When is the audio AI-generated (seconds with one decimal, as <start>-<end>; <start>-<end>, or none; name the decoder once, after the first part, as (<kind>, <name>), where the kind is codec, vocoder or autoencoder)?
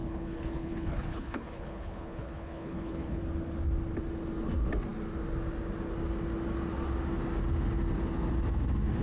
0.0-3.2 (codec, HILCodec)